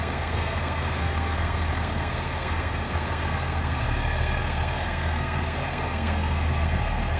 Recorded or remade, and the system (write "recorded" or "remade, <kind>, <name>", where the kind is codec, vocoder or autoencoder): remade, codec, SNAC